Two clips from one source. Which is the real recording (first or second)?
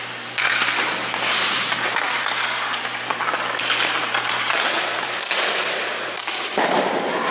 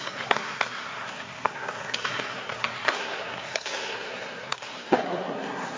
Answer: first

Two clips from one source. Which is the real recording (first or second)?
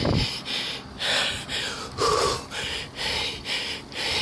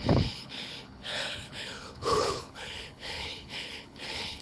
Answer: first